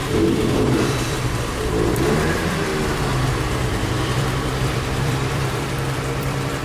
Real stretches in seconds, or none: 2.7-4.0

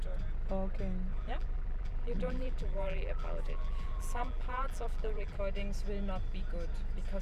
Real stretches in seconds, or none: 0.0-1.1; 5.4-7.2

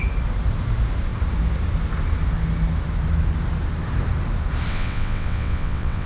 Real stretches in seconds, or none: 0.0-4.7

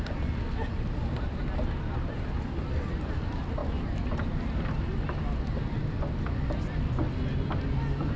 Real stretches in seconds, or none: 0.0-8.2